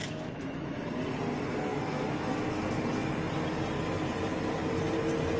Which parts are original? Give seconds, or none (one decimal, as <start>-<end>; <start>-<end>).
0.9-1.7; 2.4-5.4